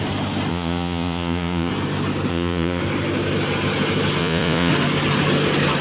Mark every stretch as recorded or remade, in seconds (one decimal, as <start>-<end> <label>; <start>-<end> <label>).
0.0-0.5 recorded; 0.5-1.7 remade; 1.7-2.3 recorded; 2.3-2.8 remade; 2.8-4.2 recorded; 4.2-4.7 remade; 4.7-5.8 recorded